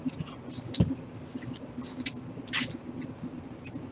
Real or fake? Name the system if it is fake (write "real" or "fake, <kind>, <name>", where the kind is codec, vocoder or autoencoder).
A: real